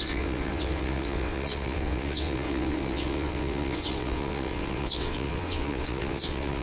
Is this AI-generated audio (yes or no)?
yes